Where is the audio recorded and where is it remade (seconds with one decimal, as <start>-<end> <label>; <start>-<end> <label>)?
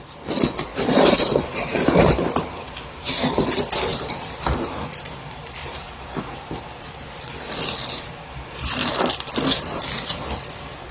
0.0-0.7 recorded; 0.7-2.7 remade; 2.7-8.8 recorded; 8.8-9.9 remade; 9.9-10.9 recorded